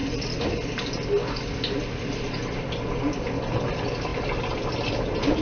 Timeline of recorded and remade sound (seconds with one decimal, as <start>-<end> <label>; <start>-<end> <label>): 0.0-5.4 recorded